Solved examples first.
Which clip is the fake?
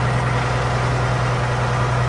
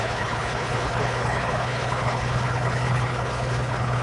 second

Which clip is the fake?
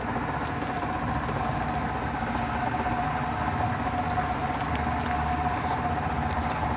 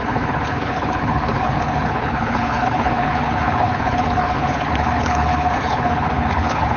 second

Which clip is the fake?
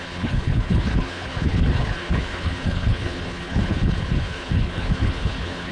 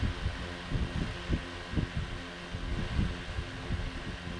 first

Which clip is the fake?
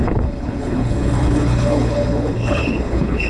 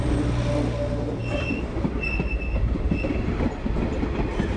first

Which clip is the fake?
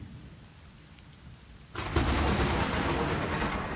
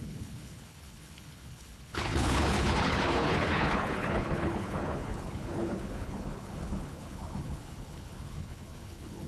second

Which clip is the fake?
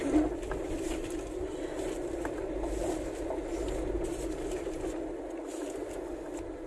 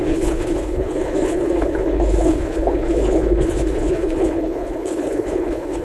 second